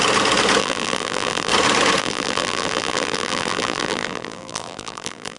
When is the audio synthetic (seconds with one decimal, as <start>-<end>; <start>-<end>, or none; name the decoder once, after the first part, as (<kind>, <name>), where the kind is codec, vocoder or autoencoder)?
0.6-1.5 (vocoder, BigVGAN v2); 2.0-5.4